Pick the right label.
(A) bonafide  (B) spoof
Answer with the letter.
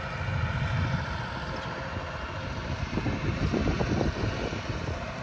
A